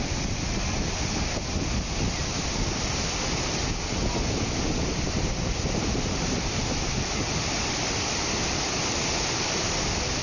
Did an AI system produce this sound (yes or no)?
no